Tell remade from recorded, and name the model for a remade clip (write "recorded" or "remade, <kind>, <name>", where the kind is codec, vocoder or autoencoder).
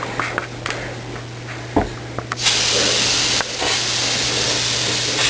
recorded